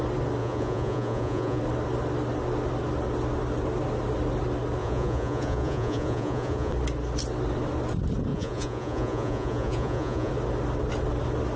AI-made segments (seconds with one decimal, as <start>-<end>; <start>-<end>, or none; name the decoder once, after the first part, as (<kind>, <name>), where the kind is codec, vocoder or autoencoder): 0.4-1.6 (vocoder, Vocos); 4.8-6.7; 8.3-10.3